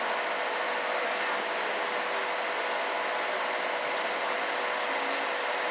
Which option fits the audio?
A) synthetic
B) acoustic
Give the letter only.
B